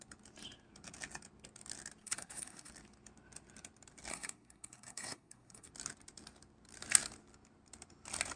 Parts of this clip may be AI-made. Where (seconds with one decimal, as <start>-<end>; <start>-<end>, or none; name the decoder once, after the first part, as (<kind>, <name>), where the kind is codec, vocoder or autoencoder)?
2.0-2.7 (codec, SNAC); 4.1-5.7